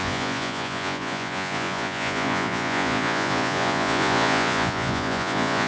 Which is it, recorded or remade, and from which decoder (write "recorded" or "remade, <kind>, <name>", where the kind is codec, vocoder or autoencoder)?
remade, vocoder, Vocos